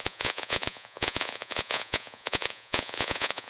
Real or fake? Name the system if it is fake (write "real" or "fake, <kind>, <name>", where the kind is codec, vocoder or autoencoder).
fake, vocoder, Vocos